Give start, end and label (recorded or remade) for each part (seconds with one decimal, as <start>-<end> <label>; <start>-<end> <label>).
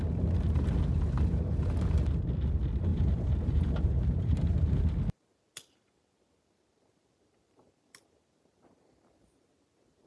0.0-2.9 recorded; 2.9-4.8 remade; 4.8-10.1 recorded